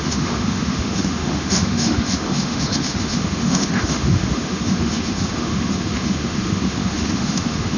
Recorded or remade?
remade